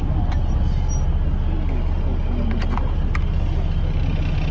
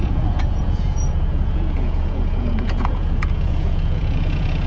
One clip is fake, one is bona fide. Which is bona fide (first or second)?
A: first